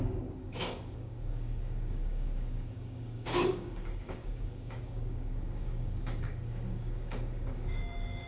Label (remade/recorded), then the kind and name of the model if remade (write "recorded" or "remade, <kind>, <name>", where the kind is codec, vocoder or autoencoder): remade, codec, DAC